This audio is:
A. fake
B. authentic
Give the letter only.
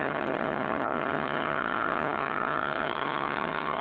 A